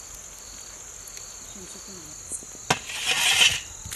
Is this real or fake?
real